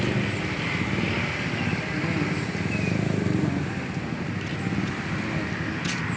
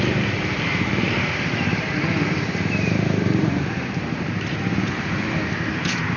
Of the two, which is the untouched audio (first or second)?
first